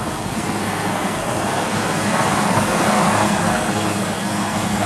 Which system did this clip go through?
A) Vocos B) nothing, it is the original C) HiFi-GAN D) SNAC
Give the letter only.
D